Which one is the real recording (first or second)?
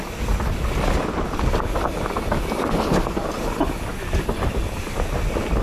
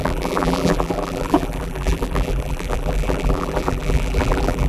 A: first